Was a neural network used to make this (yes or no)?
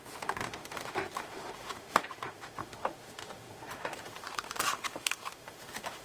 yes